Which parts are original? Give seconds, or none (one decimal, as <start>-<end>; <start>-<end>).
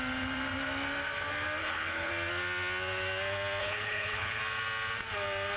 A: 0.0-1.6; 2.1-3.6; 4.4-5.6